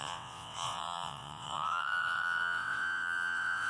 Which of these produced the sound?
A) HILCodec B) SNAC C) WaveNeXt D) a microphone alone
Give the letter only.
C